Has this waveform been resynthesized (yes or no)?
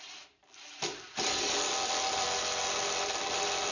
no